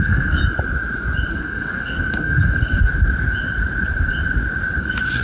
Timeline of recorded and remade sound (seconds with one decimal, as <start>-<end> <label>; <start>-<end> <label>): 0.0-0.4 remade; 0.4-1.3 recorded; 1.3-2.9 remade; 2.9-4.8 recorded; 4.8-5.2 remade